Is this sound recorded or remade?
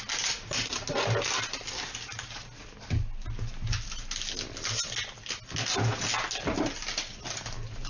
recorded